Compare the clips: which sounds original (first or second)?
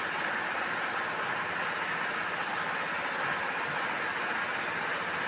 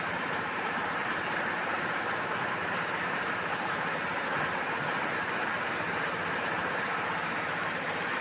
first